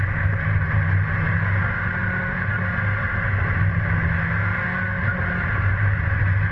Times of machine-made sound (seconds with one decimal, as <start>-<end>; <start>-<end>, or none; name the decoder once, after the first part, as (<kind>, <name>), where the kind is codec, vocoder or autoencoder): none